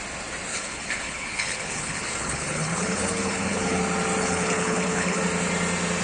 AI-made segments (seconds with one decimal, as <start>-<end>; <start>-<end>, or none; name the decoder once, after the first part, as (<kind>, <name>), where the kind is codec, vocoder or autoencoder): 0.5-3.8 (codec, HILCodec); 4.2-5.2